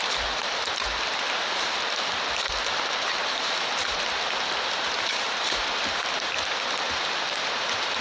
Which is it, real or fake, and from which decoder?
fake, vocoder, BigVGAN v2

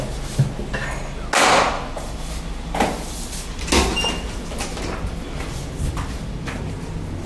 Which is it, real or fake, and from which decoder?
real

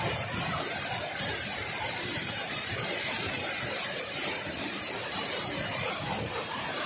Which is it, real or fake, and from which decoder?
fake, vocoder, BigVGAN v2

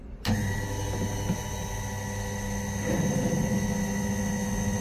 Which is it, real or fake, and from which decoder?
real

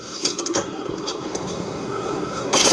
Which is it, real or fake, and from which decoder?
fake, codec, SNAC